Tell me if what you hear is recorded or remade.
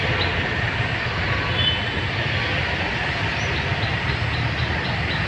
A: recorded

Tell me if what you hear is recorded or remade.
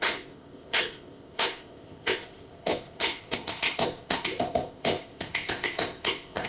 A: remade